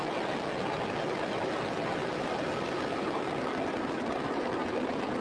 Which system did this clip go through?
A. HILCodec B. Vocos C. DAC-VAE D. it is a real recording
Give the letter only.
D